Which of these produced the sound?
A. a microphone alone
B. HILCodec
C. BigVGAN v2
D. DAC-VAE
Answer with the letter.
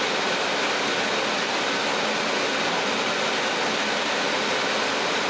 A